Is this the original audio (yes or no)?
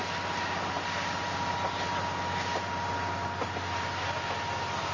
yes